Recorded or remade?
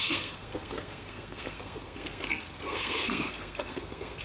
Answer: remade